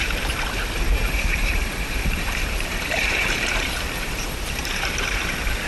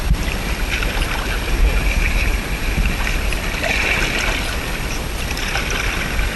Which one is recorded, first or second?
second